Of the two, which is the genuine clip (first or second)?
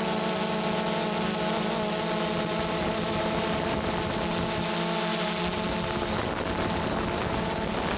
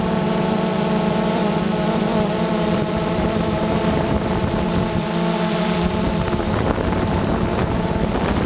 first